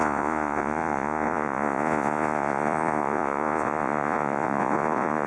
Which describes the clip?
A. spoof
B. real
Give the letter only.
A